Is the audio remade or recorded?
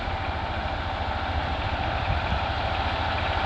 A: recorded